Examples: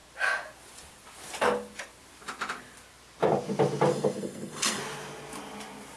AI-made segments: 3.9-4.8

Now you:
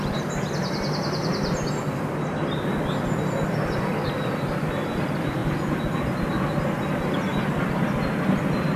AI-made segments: none